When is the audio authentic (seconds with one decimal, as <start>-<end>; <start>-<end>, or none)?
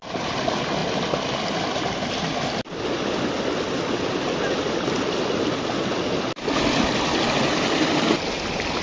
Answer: 0.0-8.8